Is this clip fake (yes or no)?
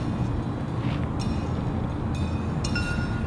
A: no